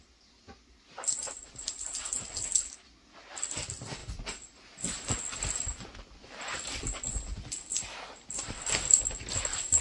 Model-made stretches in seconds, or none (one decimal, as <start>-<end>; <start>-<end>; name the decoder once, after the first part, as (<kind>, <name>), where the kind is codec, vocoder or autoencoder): none